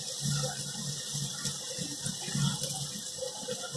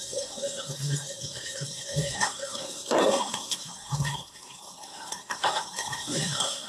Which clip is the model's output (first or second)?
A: second